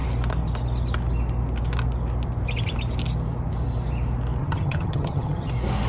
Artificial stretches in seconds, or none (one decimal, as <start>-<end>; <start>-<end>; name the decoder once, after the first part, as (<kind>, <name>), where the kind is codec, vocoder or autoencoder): 4.4-5.5 (vocoder, HiFi-GAN)